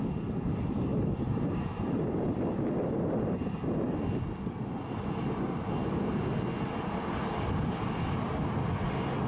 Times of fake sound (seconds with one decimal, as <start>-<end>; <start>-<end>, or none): none